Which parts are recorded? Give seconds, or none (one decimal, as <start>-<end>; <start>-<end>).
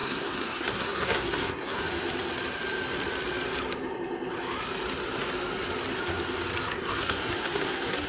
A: 1.8-6.8